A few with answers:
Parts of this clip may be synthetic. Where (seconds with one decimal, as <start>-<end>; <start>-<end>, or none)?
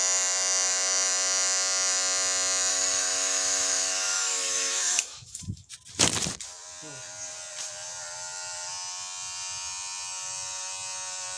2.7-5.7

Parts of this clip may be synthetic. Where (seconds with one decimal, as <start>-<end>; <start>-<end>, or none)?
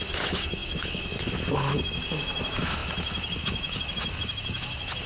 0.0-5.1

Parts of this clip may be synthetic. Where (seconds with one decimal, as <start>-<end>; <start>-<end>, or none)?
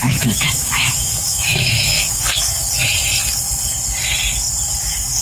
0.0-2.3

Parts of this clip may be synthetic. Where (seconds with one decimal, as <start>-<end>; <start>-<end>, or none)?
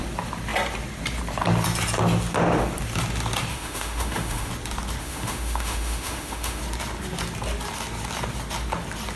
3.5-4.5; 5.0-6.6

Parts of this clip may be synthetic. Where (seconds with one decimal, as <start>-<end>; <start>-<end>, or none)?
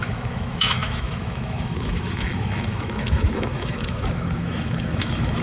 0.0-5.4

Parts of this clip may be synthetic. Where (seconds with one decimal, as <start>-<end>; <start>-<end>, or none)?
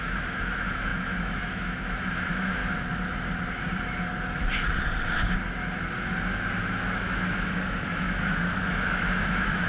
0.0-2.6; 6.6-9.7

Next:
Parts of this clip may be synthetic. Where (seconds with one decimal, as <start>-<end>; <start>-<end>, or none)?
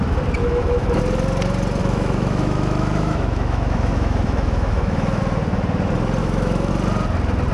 0.4-1.0; 1.8-5.2; 6.2-6.7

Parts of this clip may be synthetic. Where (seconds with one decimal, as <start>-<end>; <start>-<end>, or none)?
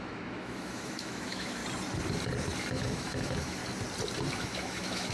0.0-1.6; 2.7-3.6; 4.4-5.1